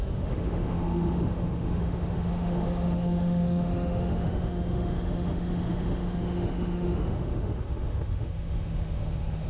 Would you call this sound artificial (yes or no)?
yes